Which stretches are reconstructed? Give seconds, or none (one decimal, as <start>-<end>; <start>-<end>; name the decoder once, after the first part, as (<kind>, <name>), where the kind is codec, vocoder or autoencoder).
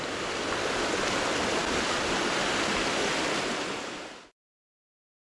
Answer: none